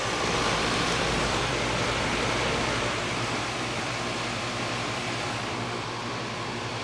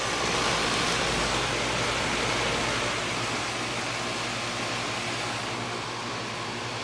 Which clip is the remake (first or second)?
first